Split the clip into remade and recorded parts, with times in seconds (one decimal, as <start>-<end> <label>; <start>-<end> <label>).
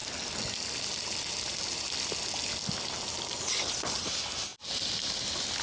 0.0-5.6 recorded